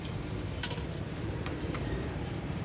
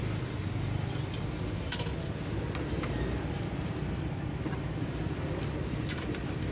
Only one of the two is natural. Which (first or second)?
second